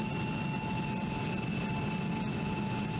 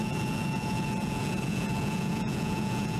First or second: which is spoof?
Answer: second